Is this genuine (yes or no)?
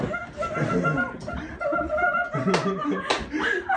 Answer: yes